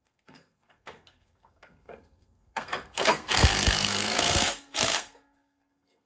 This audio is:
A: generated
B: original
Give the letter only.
A